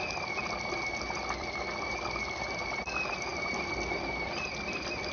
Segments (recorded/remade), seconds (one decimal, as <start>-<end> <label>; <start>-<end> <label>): 0.0-5.1 recorded